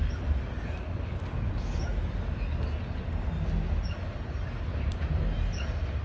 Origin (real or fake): real